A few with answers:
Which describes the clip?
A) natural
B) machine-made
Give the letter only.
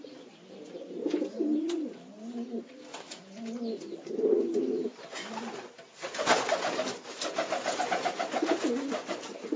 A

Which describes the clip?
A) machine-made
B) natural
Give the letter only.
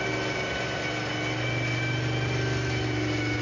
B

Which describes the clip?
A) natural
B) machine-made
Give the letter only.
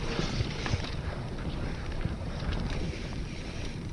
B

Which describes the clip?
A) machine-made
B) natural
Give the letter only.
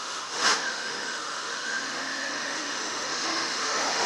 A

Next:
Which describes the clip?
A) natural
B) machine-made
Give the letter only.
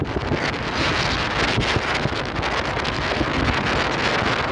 A